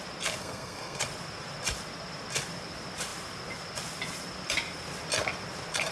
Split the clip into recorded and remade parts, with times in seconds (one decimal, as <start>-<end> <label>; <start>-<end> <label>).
0.0-0.4 recorded; 0.4-1.0 remade; 1.0-5.9 recorded